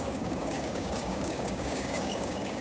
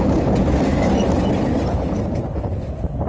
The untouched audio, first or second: second